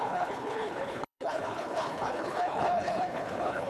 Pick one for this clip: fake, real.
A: fake